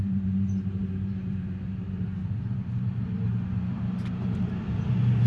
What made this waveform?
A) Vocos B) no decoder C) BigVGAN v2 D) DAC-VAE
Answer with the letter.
C